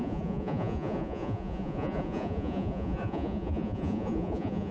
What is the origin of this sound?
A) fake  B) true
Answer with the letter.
A